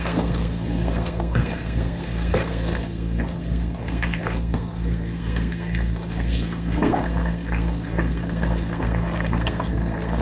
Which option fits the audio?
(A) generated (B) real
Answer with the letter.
A